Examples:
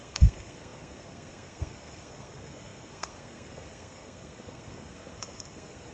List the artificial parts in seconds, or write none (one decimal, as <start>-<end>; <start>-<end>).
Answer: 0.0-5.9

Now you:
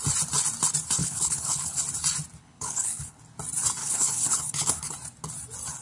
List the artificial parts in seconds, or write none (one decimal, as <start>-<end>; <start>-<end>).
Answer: 1.0-1.8; 2.4-3.2; 3.8-4.9

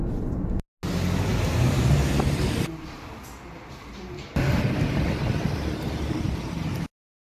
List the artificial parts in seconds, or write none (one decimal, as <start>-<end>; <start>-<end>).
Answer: 1.3-1.9

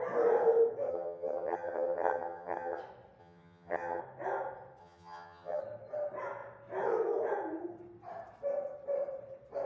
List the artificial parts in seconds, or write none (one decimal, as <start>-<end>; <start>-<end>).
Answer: 0.9-2.8; 3.2-4.0; 4.8-5.6